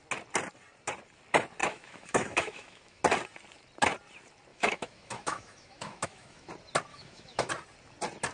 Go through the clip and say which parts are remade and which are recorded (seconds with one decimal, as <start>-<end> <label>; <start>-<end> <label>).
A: 0.0-1.6 recorded; 1.6-3.0 remade; 3.0-4.5 recorded; 4.5-6.5 remade; 6.5-6.9 recorded; 6.9-7.5 remade; 7.5-8.3 recorded